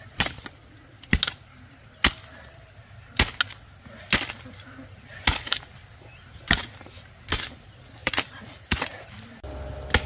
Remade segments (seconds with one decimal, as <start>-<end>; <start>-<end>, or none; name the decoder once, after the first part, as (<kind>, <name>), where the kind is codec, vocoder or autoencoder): 8.0-8.8 (vocoder, BigVGAN v2)